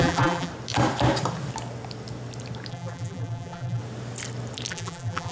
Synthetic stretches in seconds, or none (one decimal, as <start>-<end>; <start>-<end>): 0.0-0.5; 2.7-3.8; 4.7-5.3

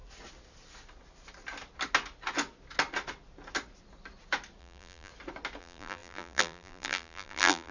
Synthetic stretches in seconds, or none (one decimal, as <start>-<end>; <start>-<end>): 4.6-5.1; 5.6-7.7

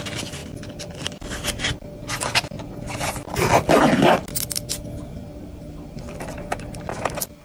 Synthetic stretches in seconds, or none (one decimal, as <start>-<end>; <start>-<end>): none

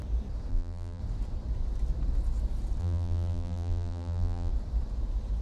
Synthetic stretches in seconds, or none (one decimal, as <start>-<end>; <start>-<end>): 0.5-1.0; 2.8-4.5

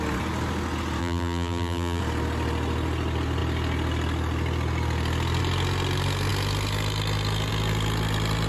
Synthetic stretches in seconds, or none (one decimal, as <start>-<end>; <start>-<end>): 1.0-2.0

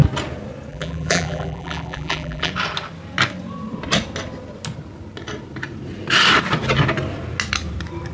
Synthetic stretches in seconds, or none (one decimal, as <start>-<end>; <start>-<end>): 0.7-2.5